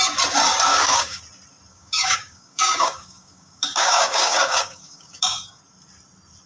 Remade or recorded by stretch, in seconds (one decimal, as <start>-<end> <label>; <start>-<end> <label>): 0.0-0.7 recorded; 0.7-1.2 remade; 1.2-1.7 recorded; 1.7-5.6 remade; 5.6-6.5 recorded